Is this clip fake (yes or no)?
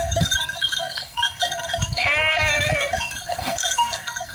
yes